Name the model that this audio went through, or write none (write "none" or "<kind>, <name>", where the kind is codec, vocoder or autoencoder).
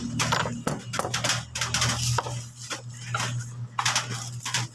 none